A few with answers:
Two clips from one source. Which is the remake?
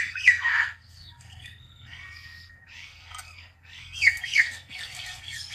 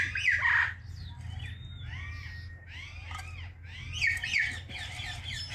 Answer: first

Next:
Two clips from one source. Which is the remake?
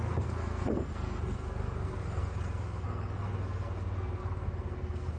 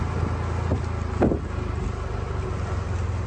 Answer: first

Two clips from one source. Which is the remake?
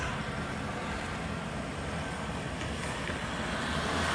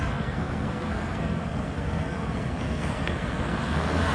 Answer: second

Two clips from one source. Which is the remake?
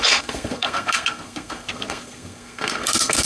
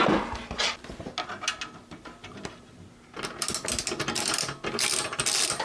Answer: first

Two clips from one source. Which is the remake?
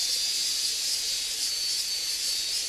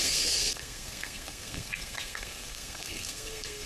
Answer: second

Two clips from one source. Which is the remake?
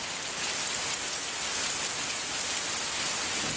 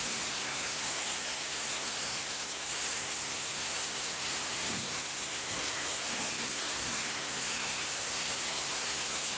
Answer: second